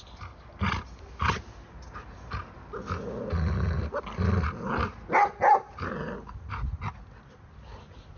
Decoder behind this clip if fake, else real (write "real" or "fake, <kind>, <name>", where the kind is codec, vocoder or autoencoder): real